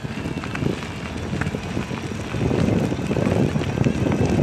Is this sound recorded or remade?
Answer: recorded